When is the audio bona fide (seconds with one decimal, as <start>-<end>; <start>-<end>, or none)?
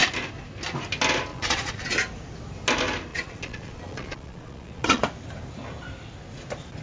0.0-1.3; 1.9-3.1; 5.0-6.8